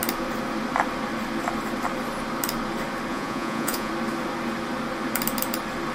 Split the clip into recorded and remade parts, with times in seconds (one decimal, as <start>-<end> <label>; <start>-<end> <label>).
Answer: 0.0-3.1 recorded; 3.1-3.9 remade; 3.9-5.9 recorded